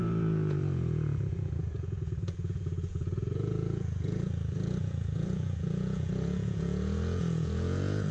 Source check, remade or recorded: remade